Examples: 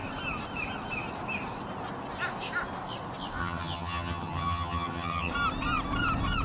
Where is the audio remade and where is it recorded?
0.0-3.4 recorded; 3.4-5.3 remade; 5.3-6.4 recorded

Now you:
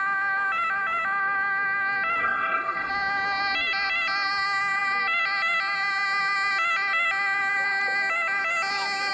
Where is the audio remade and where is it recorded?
0.0-2.2 recorded; 2.2-2.9 remade; 2.9-9.1 recorded

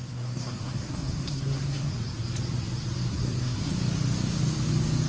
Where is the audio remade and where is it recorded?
0.0-1.9 remade; 1.9-3.1 recorded; 3.1-3.7 remade; 3.7-5.1 recorded